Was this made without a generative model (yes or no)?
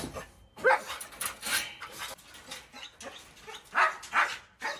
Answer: yes